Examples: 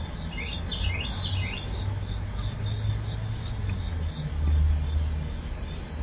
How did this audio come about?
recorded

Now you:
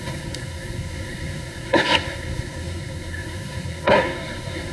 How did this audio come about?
remade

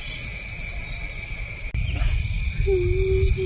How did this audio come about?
recorded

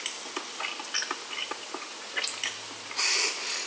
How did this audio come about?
recorded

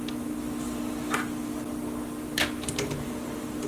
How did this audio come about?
recorded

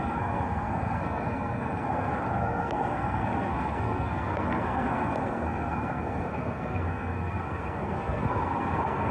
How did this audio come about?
remade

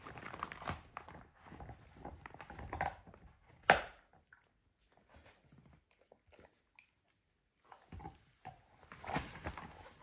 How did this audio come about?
recorded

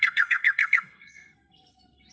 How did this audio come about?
remade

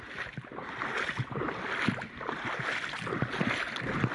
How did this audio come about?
recorded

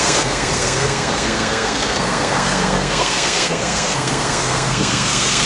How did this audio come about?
remade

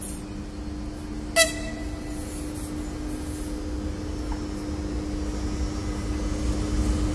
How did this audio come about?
recorded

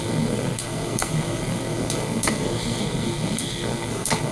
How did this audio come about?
remade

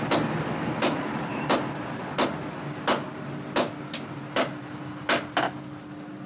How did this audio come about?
recorded